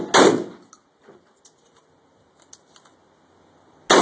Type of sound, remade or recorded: recorded